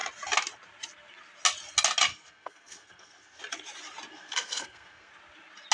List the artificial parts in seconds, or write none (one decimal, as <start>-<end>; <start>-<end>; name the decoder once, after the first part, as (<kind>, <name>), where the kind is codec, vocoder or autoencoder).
2.1-3.4 (codec, SNAC); 4.1-5.1